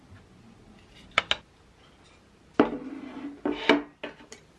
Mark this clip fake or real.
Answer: real